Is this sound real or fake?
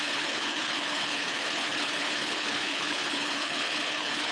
fake